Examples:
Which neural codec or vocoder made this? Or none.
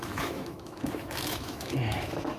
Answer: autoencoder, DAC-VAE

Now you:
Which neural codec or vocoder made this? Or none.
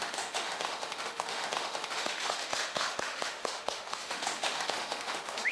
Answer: autoencoder, DAC-VAE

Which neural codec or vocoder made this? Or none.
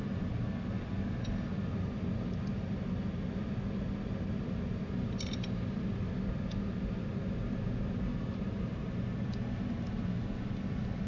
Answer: none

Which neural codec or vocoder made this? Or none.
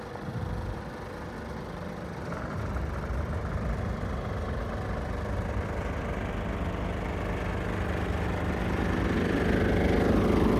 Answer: none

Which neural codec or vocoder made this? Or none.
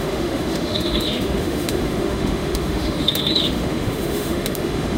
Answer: autoencoder, DAC-VAE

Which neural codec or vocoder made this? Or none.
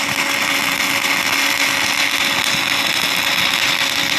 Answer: none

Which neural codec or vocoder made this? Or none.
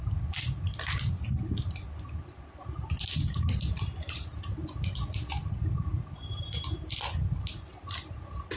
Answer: none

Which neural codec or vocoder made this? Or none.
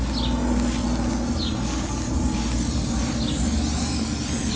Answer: none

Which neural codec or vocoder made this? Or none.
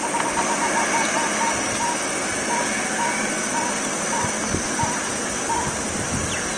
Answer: none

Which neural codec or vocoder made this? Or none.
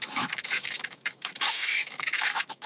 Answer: autoencoder, DAC-VAE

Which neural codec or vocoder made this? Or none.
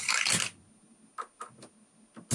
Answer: none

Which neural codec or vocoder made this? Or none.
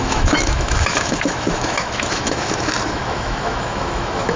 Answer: autoencoder, DAC-VAE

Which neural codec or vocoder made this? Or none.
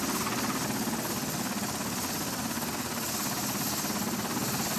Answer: none